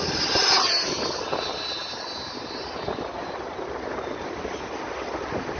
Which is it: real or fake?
real